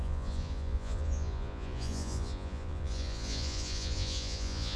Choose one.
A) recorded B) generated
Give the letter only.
B